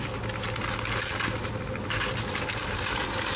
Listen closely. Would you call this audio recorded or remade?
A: recorded